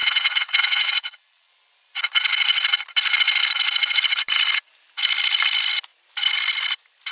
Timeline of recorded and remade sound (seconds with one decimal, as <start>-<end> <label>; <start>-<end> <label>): 0.0-1.5 remade; 1.5-7.1 recorded